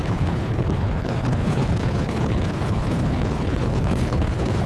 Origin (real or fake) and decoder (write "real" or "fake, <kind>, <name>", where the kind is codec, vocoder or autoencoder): fake, codec, HILCodec